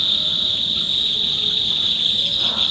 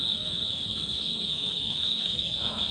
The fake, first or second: second